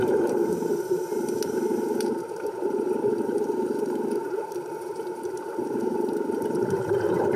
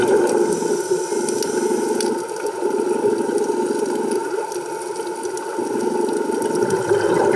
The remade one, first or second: first